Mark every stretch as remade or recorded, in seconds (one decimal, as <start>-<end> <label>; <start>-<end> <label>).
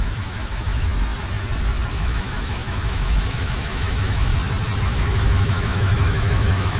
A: 0.0-0.9 remade; 0.9-1.9 recorded; 1.9-4.3 remade; 4.3-4.8 recorded; 4.8-6.8 remade